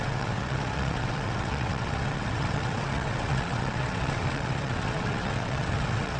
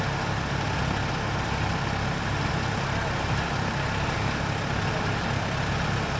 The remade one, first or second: first